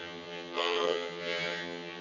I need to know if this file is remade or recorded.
remade